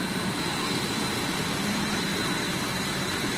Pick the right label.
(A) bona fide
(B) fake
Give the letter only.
B